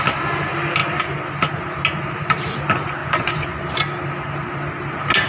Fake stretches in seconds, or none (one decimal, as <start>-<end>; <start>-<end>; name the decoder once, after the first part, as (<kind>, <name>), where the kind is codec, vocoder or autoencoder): 3.0-3.6 (vocoder, Vocos)

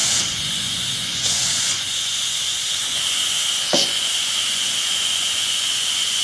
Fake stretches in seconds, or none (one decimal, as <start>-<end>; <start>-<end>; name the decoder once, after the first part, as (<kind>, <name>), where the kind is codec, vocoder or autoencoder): 0.0-6.2 (vocoder, Vocos)

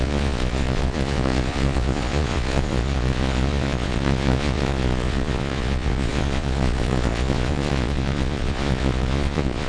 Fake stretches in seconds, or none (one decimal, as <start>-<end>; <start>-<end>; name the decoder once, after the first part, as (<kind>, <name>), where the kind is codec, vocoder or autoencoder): 0.0-9.7 (vocoder, Vocos)

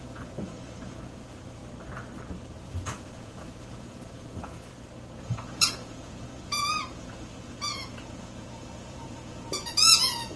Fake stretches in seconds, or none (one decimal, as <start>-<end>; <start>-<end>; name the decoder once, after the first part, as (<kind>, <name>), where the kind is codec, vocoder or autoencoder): 0.0-1.6 (vocoder, Vocos); 2.6-4.7; 5.2-10.4

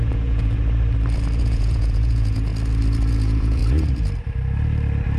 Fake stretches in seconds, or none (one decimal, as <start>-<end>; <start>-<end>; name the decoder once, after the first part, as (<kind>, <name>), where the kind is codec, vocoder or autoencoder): 0.0-0.6 (vocoder, Vocos); 1.4-2.5; 3.1-3.6